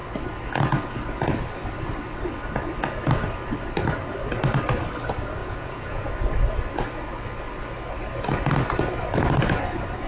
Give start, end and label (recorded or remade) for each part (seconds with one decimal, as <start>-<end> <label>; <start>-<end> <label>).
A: 0.0-5.4 recorded; 5.4-6.1 remade; 6.1-10.1 recorded